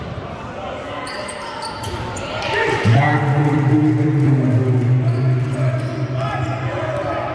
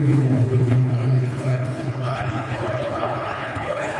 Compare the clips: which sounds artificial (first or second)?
second